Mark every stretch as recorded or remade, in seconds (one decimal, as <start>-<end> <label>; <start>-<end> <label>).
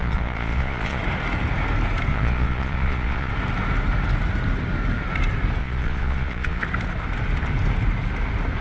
0.0-1.0 remade; 1.0-2.1 recorded; 2.1-3.3 remade; 3.3-5.6 recorded; 5.6-6.6 remade; 6.6-8.6 recorded